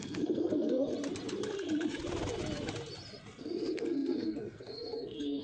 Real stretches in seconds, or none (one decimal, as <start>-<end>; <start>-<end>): 0.9-3.4

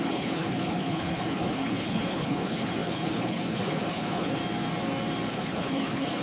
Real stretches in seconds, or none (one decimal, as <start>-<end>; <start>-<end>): 4.4-5.3

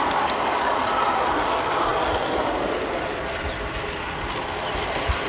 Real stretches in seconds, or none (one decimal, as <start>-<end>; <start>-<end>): 0.0-5.3

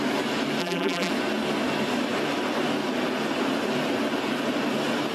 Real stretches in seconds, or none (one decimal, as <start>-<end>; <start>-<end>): 0.0-0.6; 1.1-5.1

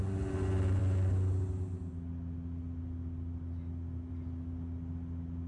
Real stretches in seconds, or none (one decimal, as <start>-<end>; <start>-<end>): 0.0-5.5

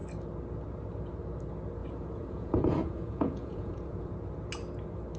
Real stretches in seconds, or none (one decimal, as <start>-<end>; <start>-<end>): 0.0-1.8; 4.1-5.2

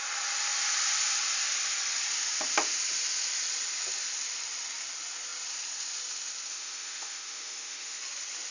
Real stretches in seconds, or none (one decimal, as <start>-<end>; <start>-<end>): 0.0-6.5; 8.0-8.5

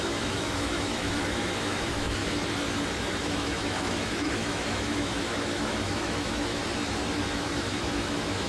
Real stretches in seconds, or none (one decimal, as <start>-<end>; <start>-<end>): 2.2-3.2; 6.6-7.3